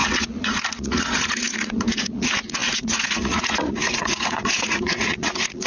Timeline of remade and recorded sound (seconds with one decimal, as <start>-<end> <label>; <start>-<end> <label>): 0.0-5.7 remade